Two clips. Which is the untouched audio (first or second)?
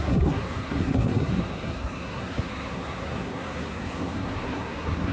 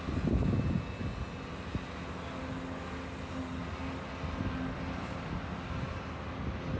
second